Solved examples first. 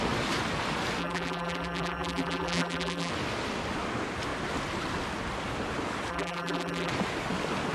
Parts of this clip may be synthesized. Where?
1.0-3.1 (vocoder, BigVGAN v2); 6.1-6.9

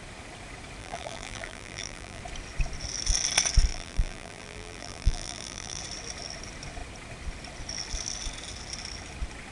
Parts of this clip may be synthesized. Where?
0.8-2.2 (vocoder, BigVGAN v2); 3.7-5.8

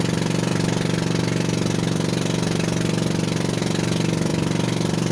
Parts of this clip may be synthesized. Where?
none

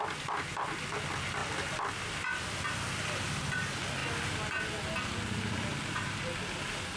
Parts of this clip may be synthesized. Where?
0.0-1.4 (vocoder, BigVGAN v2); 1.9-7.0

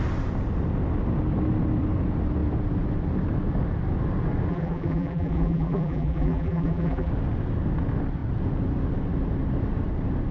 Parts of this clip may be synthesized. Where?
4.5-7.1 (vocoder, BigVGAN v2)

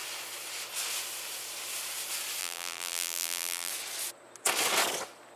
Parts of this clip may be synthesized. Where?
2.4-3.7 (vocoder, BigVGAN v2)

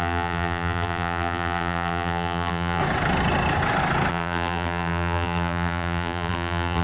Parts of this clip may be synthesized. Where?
0.0-2.8 (vocoder, BigVGAN v2); 4.1-6.8